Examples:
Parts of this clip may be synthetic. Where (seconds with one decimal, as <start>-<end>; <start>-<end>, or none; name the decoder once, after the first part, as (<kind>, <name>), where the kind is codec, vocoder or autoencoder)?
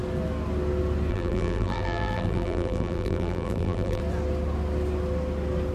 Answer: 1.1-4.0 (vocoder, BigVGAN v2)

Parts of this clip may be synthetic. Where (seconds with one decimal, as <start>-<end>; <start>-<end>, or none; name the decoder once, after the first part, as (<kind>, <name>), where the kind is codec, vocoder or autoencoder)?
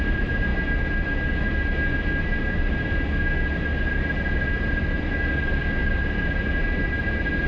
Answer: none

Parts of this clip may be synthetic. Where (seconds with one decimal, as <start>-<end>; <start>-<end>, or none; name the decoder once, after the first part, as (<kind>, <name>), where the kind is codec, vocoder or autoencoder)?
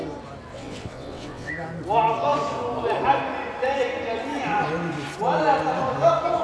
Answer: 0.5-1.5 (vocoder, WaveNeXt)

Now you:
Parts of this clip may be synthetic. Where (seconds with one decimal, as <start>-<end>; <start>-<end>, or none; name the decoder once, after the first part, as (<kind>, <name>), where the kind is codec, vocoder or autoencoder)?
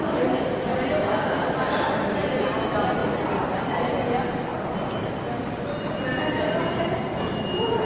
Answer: none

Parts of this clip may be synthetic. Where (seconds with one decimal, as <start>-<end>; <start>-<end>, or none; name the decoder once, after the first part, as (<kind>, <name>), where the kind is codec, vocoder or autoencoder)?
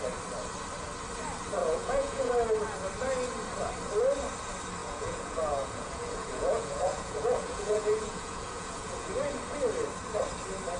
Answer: 1.6-2.3 (vocoder, Vocos); 4.8-9.1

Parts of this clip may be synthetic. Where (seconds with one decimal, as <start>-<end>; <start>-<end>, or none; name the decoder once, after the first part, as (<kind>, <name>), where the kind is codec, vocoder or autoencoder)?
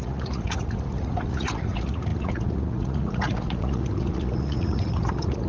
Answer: 0.0-5.5 (vocoder, Vocos)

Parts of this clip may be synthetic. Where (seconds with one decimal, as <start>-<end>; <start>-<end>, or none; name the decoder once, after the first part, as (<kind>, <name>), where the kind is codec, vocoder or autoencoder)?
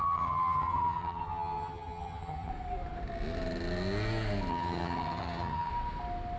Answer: 0.0-2.5 (vocoder, HiFi-GAN); 4.5-5.7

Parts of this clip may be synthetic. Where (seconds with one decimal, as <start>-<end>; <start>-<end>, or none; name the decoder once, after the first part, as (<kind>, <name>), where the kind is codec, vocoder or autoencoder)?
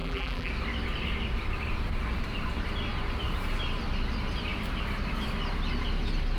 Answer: 0.0-0.5 (vocoder, BigVGAN v2)